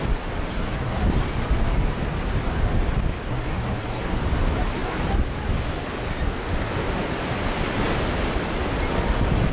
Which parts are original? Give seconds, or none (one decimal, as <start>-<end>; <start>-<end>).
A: 0.0-0.5; 1.0-3.3; 4.2-9.5